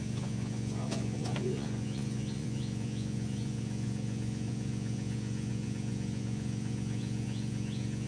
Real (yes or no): no